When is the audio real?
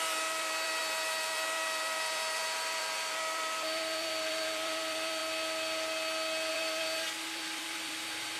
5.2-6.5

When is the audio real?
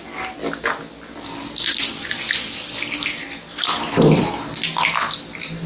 0.0-5.7